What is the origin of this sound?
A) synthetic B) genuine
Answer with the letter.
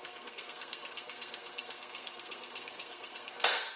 A